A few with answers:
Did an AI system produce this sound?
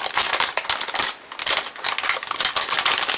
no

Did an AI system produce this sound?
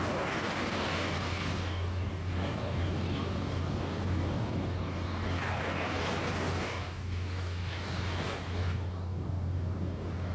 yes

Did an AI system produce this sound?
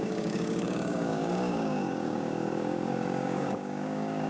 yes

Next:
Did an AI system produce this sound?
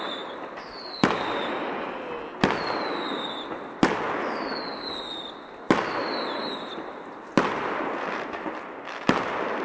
no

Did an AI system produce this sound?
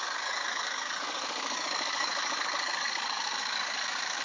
yes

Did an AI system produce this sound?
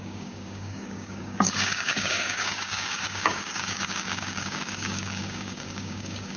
yes